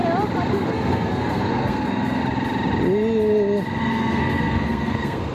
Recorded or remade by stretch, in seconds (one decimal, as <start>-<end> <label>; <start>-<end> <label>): 0.0-0.5 recorded; 0.5-2.2 remade; 2.2-3.8 recorded; 3.8-5.3 remade